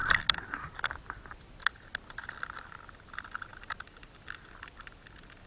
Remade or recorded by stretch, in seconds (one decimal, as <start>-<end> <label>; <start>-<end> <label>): 0.0-5.5 recorded